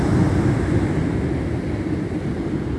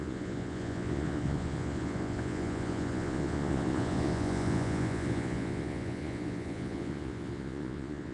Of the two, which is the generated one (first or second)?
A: second